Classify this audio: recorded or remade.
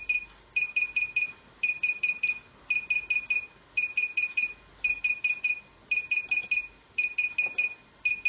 recorded